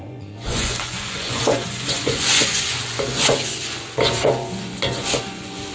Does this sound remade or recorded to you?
remade